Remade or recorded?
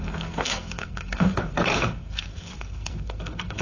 remade